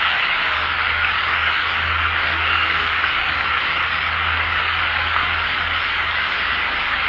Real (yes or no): no